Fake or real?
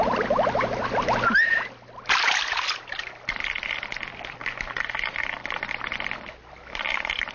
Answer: real